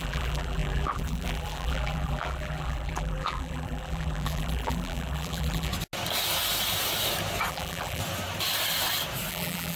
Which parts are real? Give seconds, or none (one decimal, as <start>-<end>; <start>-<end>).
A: 5.7-7.5; 8.0-9.3